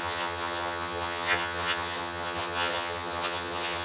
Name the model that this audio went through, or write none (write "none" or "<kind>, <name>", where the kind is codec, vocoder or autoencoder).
vocoder, HiFi-GAN